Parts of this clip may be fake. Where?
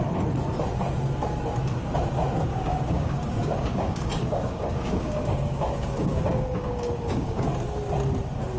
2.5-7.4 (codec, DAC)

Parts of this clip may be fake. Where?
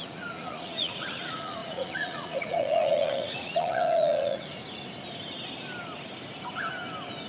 0.0-4.6 (vocoder, Vocos)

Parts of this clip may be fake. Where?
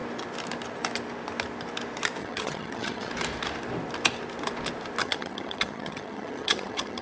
2.2-3.1 (vocoder, HiFi-GAN); 5.0-7.0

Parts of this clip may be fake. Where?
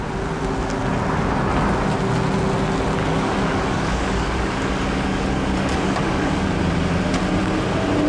3.0-6.6 (codec, DAC)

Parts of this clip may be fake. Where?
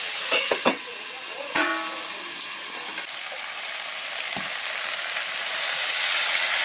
0.0-1.7 (vocoder, WaveNeXt); 5.7-6.6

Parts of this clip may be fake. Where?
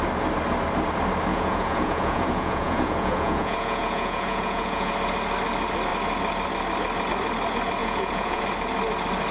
1.3-4.9 (vocoder, Vocos); 7.8-8.4